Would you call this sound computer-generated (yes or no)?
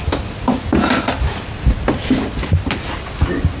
no